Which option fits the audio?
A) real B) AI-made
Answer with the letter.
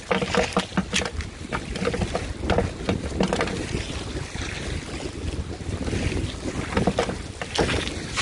A